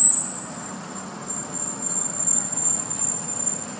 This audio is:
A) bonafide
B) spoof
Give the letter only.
A